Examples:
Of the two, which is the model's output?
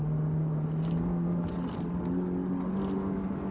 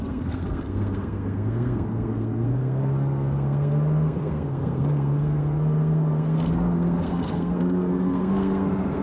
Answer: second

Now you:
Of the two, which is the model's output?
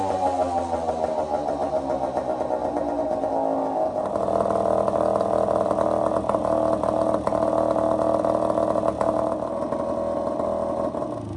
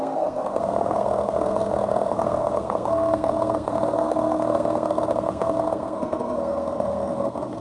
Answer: second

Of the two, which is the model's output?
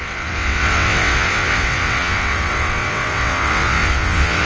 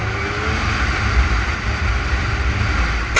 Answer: first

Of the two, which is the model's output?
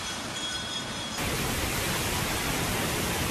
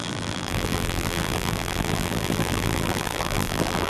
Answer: second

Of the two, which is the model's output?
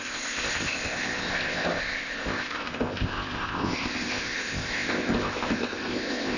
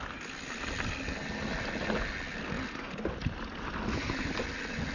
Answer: first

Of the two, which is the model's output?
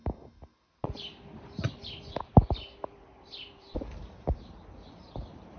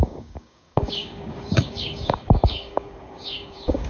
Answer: second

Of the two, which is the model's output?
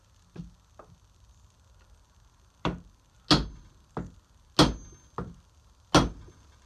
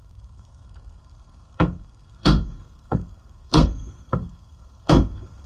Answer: second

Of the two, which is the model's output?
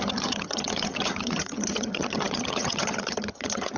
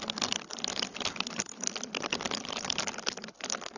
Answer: first